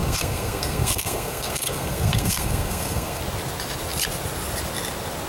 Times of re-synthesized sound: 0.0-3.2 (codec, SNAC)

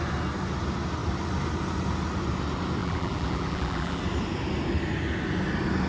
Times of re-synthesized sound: 2.8-4.0 (vocoder, BigVGAN v2)

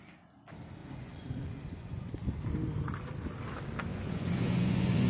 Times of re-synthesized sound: 0.8-2.1 (vocoder, Vocos); 3.9-5.1

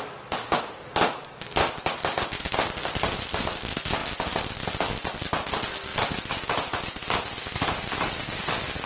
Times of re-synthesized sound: 5.9-6.8 (vocoder, BigVGAN v2)

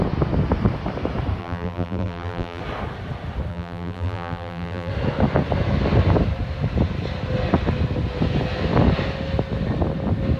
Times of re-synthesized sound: 1.4-2.6 (vocoder, BigVGAN v2); 3.5-4.9